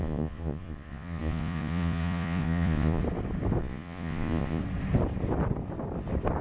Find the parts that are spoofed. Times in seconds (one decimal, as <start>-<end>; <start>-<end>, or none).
0.0-3.0; 3.6-4.6

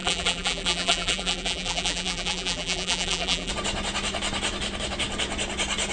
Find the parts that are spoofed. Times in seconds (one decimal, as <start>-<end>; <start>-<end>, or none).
0.0-3.5

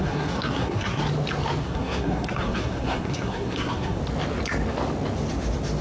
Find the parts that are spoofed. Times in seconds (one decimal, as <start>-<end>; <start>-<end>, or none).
0.0-1.0; 1.6-4.0